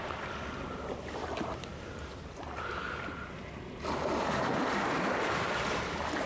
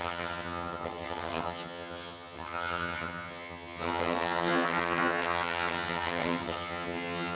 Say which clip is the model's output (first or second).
second